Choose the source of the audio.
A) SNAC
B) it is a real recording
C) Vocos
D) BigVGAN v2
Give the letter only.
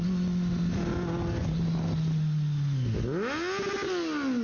B